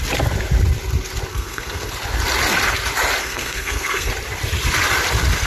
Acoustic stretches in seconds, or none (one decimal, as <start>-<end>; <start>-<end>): 0.0-1.3; 1.9-3.2; 4.1-5.5